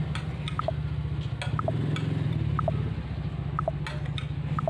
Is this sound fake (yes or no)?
no